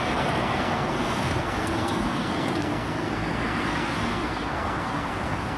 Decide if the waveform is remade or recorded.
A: remade